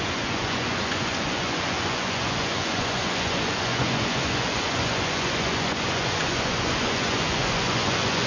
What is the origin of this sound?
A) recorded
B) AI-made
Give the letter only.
B